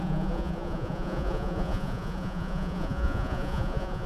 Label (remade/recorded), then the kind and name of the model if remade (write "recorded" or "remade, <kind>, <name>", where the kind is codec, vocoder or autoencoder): remade, vocoder, Vocos